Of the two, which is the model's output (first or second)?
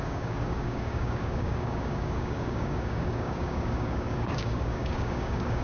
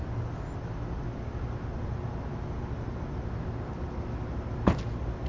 first